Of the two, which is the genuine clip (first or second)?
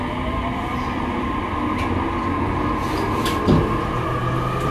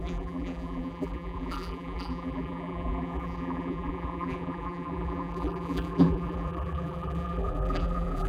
first